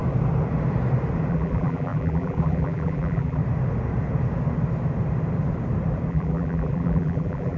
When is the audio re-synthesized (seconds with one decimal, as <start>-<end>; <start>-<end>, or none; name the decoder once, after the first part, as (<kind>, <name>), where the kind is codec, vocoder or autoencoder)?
1.3-3.4 (vocoder, BigVGAN v2); 6.1-7.6